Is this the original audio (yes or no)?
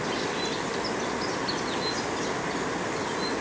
yes